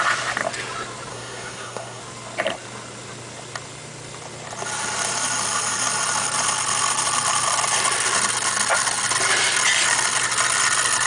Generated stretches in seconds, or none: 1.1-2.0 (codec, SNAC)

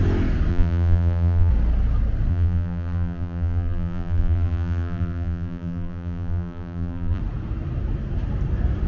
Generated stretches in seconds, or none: 0.5-1.5 (vocoder, BigVGAN v2); 2.3-7.2